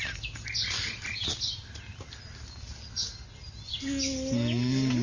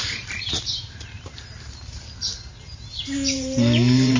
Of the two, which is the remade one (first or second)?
second